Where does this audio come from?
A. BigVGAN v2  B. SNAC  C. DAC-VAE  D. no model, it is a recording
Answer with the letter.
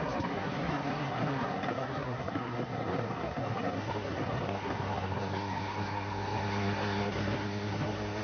B